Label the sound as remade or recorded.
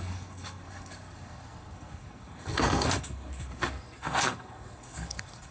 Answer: remade